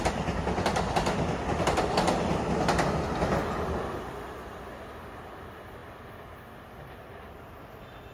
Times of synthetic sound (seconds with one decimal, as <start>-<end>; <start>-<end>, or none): none